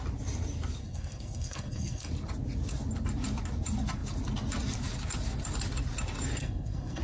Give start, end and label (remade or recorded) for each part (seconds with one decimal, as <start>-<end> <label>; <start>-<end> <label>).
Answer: 0.0-0.8 recorded; 0.8-2.1 remade; 2.1-6.4 recorded; 6.4-7.0 remade